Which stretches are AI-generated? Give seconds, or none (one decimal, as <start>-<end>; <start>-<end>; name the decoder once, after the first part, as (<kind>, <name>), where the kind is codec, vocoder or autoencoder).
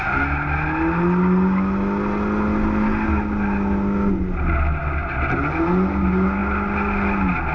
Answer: none